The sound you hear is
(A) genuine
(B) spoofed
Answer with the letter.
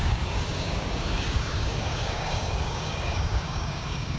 B